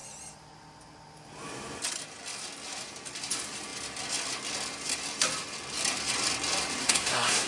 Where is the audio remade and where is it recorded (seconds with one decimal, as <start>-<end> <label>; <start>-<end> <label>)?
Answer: 0.0-6.8 recorded; 6.8-7.5 remade